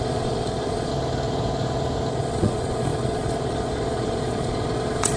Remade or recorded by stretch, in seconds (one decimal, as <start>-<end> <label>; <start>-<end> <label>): 0.0-0.9 remade; 0.9-2.1 recorded; 2.1-5.2 remade